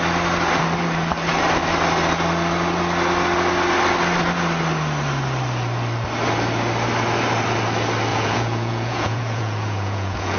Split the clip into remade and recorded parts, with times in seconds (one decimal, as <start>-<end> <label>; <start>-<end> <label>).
0.0-8.1 recorded; 8.1-10.4 remade